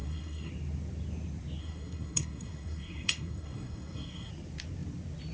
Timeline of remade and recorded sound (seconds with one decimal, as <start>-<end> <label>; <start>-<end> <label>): 0.0-0.5 remade; 0.5-1.6 recorded; 1.6-4.3 remade; 4.3-5.3 recorded